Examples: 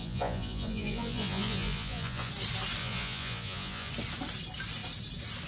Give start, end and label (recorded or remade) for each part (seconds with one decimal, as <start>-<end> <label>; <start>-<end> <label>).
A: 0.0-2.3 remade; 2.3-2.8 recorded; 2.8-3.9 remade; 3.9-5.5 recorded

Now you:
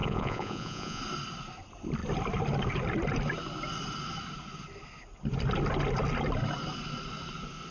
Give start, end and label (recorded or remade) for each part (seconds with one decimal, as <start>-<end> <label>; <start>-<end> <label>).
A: 0.0-1.0 remade; 1.0-7.7 recorded

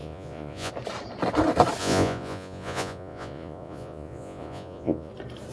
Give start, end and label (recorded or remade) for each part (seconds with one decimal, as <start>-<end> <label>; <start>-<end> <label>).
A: 0.0-0.7 remade; 0.7-1.8 recorded; 1.8-5.1 remade; 5.1-5.5 recorded

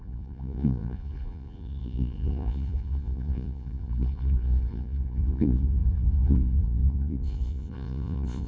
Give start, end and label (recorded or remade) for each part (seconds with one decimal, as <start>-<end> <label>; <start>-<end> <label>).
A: 0.0-8.5 remade